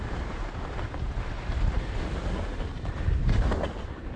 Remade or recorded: remade